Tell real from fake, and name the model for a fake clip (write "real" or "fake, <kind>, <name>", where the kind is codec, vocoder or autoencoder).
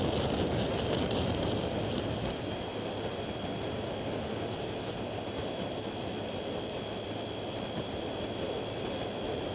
real